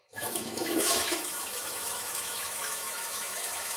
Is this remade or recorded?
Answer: remade